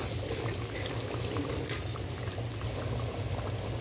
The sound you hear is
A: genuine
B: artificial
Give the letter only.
A